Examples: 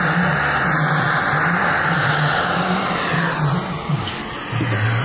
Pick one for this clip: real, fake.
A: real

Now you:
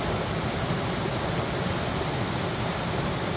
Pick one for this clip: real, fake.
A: real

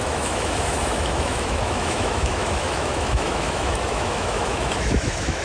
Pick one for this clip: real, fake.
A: fake